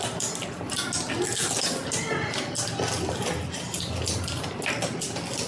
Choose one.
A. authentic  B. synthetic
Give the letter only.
A